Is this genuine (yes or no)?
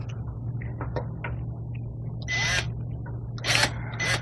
yes